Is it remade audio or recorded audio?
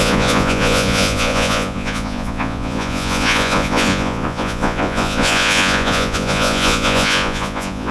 remade